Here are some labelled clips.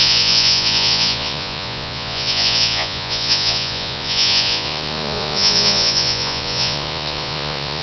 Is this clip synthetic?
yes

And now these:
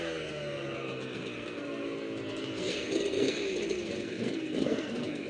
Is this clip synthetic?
yes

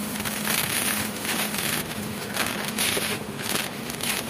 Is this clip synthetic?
yes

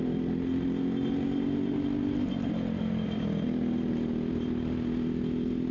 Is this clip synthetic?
no